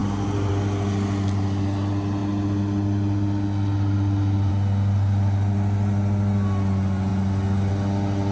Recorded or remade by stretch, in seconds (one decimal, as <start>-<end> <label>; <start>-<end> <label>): 0.0-8.3 recorded